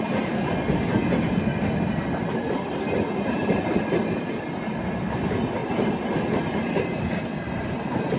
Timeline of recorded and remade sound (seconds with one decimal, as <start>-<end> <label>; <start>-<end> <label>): 0.0-8.2 recorded